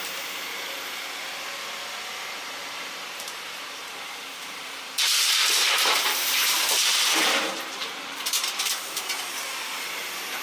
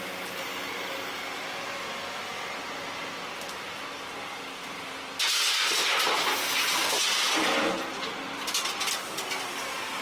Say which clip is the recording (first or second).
second